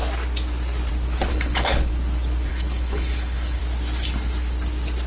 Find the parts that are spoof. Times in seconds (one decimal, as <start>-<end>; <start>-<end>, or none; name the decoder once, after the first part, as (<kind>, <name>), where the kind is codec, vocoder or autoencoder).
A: 1.3-1.9 (codec, HILCodec); 2.5-3.6